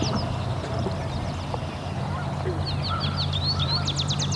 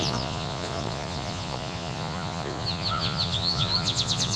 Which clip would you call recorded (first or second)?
first